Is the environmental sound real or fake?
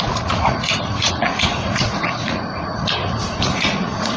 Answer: fake